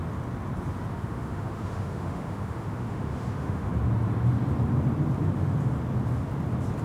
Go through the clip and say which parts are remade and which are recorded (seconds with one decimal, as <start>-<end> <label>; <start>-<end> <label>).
0.0-0.9 recorded; 0.9-3.7 remade; 3.7-6.8 recorded